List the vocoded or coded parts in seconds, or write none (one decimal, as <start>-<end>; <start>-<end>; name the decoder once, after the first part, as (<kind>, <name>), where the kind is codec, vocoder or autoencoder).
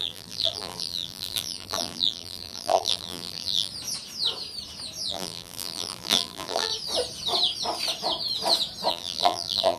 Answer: 0.0-3.7 (vocoder, BigVGAN v2); 5.1-6.7; 8.9-9.8